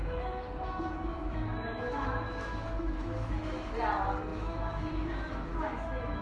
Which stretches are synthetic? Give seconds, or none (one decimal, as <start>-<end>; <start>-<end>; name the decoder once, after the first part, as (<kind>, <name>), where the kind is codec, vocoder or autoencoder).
0.0-3.7 (autoencoder, DAC-VAE); 4.3-6.2